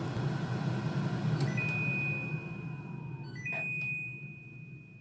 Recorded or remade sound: recorded